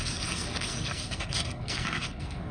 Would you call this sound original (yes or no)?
no